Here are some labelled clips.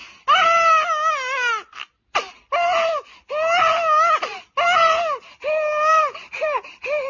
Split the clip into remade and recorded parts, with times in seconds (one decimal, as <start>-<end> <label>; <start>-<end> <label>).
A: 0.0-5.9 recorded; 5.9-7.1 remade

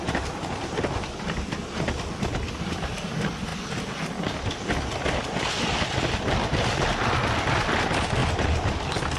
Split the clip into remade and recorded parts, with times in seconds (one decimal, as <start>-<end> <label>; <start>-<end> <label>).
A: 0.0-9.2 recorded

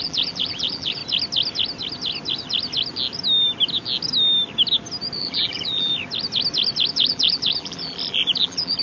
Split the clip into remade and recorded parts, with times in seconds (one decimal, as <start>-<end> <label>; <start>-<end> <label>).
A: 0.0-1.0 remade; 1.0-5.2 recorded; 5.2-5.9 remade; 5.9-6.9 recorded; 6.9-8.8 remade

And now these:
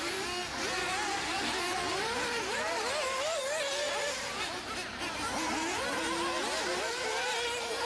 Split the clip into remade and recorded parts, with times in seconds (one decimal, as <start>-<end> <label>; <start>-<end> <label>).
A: 0.0-1.9 recorded; 1.9-2.9 remade; 2.9-7.9 recorded